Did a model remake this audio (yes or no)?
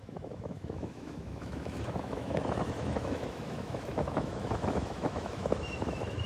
yes